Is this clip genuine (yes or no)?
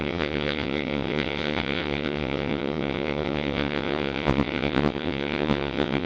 no